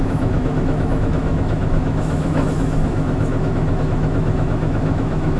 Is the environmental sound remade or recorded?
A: remade